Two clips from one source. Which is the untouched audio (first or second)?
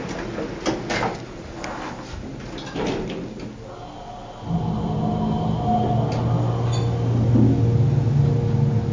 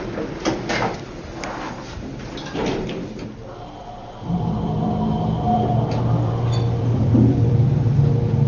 first